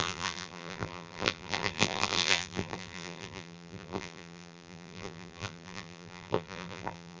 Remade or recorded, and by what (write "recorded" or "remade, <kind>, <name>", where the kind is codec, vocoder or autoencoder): remade, vocoder, BigVGAN v2